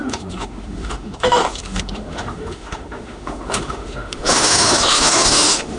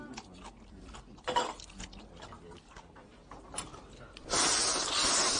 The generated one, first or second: first